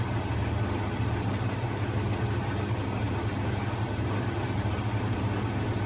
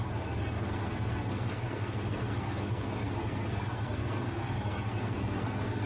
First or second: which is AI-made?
second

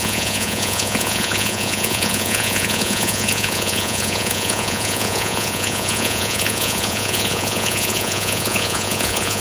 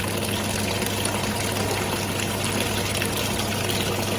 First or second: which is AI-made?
first